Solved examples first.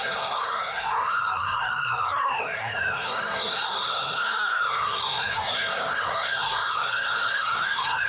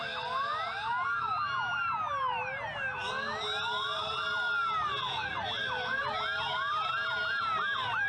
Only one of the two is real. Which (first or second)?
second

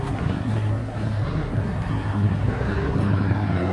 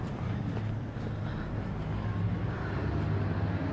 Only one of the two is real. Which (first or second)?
second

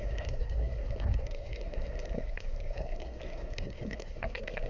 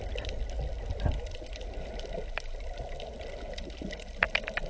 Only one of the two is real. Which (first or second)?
second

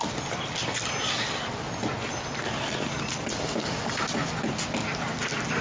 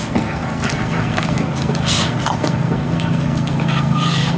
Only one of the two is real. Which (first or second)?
first